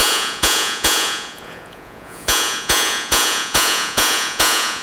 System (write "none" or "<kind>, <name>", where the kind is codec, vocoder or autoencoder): vocoder, Vocos